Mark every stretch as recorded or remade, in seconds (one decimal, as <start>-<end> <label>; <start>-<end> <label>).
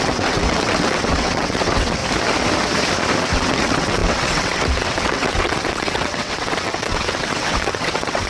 0.0-2.0 remade; 2.0-3.2 recorded; 3.2-8.3 remade